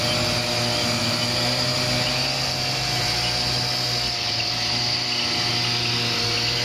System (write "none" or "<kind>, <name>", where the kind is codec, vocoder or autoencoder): none